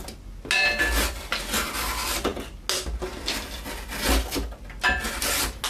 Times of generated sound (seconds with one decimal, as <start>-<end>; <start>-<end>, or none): none